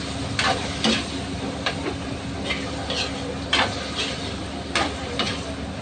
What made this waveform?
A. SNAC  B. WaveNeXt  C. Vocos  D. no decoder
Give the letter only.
D